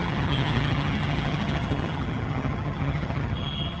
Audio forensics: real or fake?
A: fake